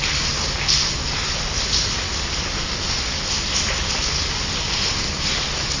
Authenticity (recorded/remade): recorded